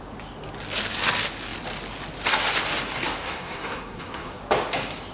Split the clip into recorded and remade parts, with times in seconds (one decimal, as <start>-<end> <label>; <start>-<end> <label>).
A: 0.0-3.3 recorded; 3.3-4.4 remade; 4.4-5.1 recorded